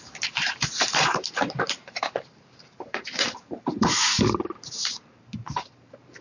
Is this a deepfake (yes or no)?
yes